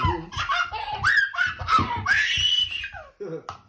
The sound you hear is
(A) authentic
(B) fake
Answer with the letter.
A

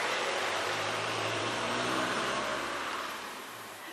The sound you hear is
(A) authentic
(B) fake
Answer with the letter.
B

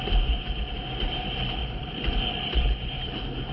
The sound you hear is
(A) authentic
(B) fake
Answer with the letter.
A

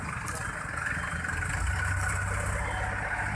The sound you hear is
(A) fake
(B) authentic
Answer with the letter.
B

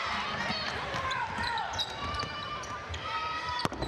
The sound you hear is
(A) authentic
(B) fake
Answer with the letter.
B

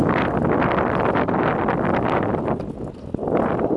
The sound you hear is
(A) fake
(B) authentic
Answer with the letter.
B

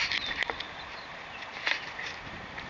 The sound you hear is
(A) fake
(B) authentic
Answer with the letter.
A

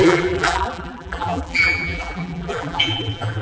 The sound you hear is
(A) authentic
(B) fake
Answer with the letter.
B